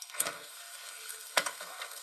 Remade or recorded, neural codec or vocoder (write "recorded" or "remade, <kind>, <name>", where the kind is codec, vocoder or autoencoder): remade, codec, SNAC